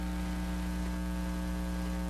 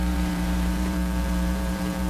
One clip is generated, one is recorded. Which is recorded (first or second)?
first